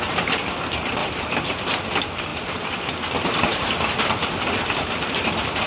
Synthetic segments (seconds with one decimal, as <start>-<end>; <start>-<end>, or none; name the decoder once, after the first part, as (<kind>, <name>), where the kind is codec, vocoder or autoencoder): 1.0-1.6 (vocoder, BigVGAN v2); 2.3-5.7